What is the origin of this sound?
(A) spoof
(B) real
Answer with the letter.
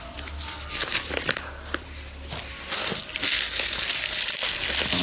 B